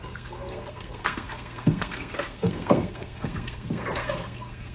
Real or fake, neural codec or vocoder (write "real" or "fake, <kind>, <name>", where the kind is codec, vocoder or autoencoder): fake, codec, SNAC